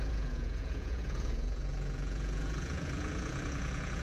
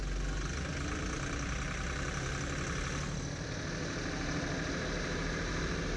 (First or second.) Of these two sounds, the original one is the second